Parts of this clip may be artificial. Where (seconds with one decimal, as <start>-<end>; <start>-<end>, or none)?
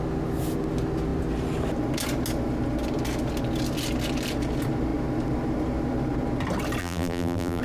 6.8-7.6